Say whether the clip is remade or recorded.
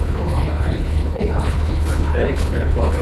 remade